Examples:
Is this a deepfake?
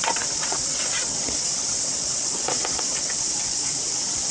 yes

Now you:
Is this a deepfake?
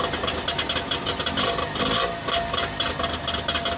no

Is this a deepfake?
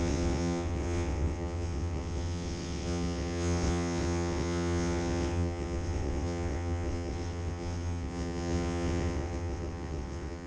yes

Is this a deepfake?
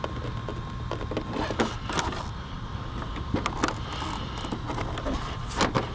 no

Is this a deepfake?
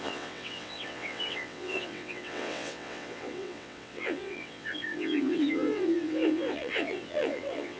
yes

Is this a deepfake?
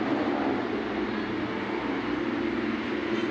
no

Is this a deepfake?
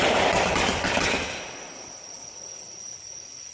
no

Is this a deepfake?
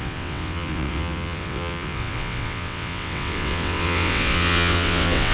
yes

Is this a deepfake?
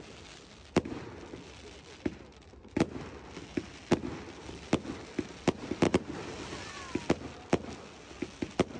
no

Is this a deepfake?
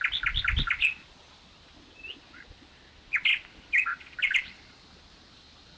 no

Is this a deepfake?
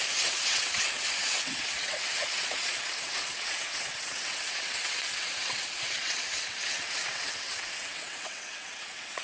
yes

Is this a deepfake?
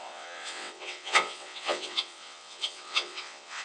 yes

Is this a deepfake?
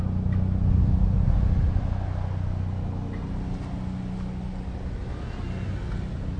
no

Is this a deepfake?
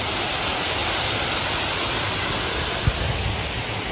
no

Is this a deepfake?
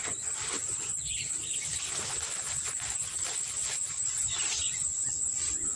no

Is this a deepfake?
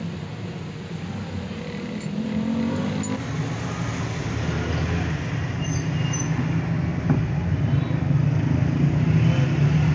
no